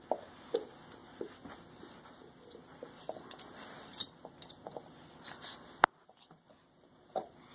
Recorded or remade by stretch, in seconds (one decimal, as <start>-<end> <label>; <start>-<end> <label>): 0.0-7.5 recorded

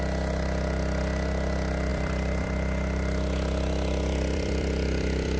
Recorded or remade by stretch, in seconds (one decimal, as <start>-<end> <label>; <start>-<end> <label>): 0.0-1.9 recorded; 1.9-5.4 remade

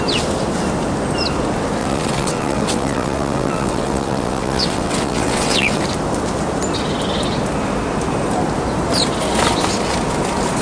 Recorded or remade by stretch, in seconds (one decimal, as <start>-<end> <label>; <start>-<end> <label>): 0.0-1.8 recorded; 1.8-5.8 remade; 5.8-10.6 recorded

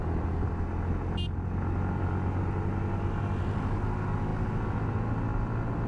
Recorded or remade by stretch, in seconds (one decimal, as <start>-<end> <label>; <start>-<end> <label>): 0.0-5.9 recorded

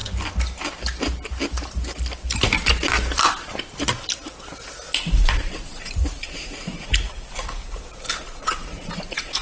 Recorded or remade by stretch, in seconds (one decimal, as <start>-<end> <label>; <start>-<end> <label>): 0.0-5.0 recorded; 5.0-7.6 remade; 7.6-8.2 recorded; 8.2-9.4 remade

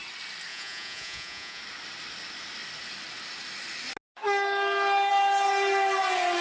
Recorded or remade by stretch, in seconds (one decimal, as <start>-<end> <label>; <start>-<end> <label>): 0.0-0.5 recorded; 0.5-1.6 remade; 1.6-6.4 recorded

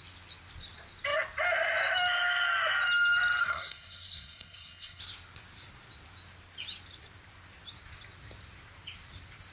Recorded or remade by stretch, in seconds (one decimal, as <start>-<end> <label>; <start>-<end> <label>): 0.0-3.4 recorded; 3.4-5.0 remade; 5.0-9.5 recorded